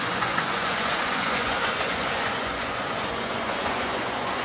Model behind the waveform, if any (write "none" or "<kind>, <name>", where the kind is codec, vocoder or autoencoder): vocoder, Vocos